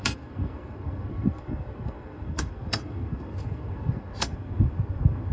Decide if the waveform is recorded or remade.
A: remade